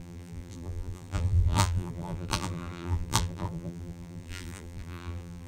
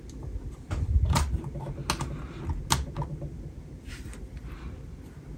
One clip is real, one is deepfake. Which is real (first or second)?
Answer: second